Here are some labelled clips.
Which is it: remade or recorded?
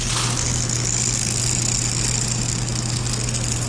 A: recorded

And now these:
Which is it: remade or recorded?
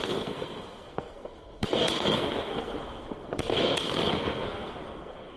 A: remade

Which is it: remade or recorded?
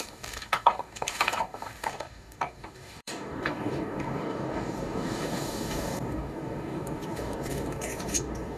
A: remade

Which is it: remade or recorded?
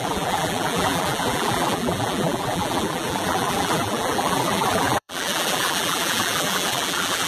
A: remade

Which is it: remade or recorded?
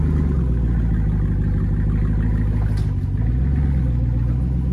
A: recorded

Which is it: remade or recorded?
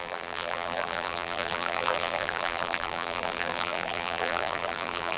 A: remade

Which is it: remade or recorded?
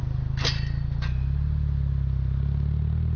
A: recorded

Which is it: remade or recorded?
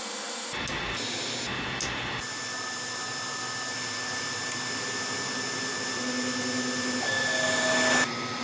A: recorded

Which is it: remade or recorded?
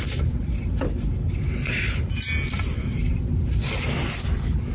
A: recorded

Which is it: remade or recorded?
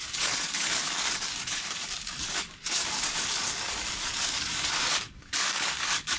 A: remade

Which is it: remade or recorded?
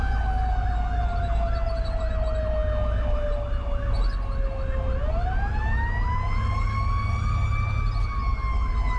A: recorded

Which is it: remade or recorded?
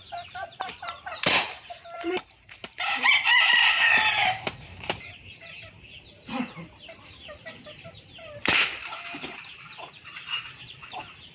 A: remade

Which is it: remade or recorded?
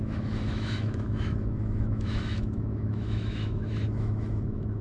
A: remade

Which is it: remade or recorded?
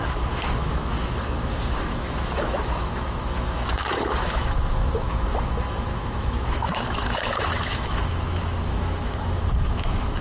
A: remade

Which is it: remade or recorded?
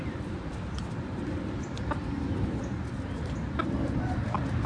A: remade